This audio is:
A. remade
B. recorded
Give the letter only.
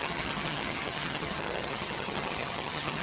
A